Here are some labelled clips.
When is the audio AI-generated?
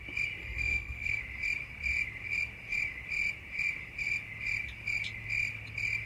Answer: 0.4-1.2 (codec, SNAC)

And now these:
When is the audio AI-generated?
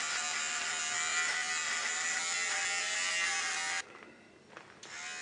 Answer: none